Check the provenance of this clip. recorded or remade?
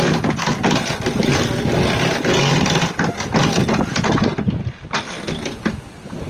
recorded